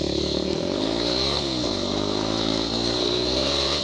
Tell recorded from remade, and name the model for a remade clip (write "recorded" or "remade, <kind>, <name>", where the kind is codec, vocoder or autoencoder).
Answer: remade, codec, SNAC